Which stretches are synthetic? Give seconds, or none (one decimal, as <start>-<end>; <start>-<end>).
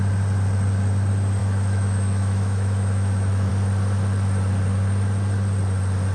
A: 1.4-3.5